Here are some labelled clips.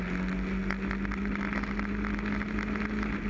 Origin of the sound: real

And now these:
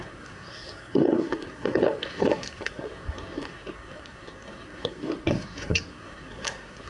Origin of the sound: fake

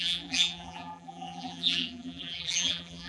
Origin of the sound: fake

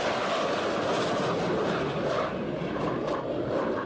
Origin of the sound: real